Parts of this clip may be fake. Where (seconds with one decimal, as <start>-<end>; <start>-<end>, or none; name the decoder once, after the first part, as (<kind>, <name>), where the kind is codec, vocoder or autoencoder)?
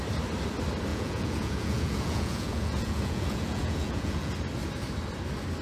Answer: 0.9-4.3 (vocoder, Vocos)